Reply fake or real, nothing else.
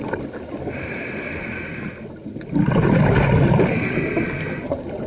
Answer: real